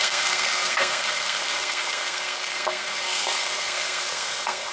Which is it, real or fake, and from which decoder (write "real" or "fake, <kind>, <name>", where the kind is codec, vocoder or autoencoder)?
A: fake, codec, SNAC